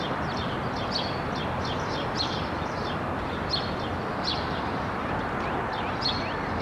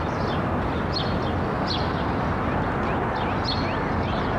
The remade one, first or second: first